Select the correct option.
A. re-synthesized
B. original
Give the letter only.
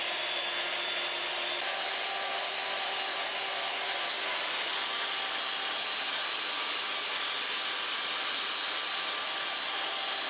B